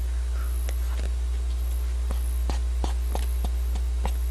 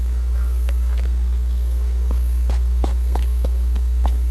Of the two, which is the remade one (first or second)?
second